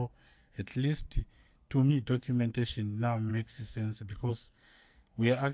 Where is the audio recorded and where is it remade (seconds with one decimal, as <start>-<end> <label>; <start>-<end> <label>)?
0.0-0.7 remade; 0.7-1.9 recorded; 1.9-5.5 remade